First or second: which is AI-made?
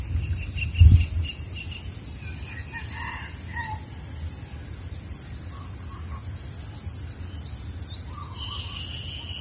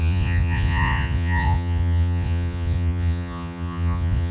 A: second